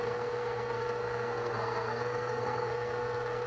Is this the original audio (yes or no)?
no